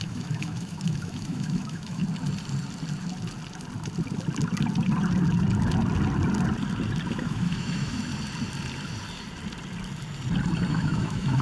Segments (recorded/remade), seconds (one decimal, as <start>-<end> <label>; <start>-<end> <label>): 0.0-2.0 remade; 2.0-7.1 recorded; 7.1-8.1 remade; 8.1-10.7 recorded; 10.7-11.4 remade

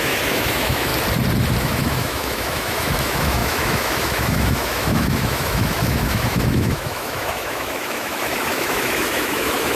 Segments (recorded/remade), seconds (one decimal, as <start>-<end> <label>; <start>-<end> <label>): 0.0-0.9 remade; 0.9-1.6 recorded; 1.6-9.8 remade

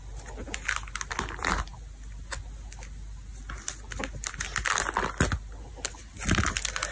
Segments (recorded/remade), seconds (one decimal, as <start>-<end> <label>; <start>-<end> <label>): 0.0-6.9 recorded

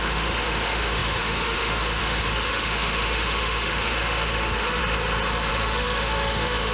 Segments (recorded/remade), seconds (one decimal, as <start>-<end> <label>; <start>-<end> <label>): 0.0-4.8 remade; 4.8-5.5 recorded; 5.5-6.7 remade

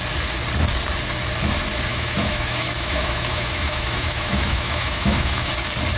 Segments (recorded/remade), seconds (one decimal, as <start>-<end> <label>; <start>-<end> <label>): 0.0-1.9 recorded; 1.9-5.5 remade; 5.5-6.0 recorded

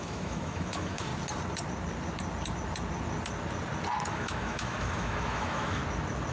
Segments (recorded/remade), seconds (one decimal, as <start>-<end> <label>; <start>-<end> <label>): 0.0-1.1 remade; 1.1-4.1 recorded; 4.1-5.8 remade; 5.8-6.3 recorded

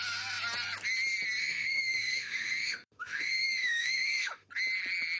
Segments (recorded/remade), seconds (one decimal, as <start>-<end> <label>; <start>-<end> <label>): 0.0-1.4 recorded; 1.4-4.5 remade; 4.5-5.2 recorded